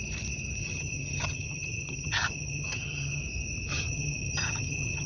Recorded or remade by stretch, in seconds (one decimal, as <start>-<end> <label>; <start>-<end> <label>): 0.0-0.6 recorded; 0.6-3.2 remade; 3.2-3.7 recorded; 3.7-5.1 remade